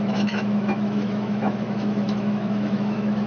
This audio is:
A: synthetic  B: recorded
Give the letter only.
A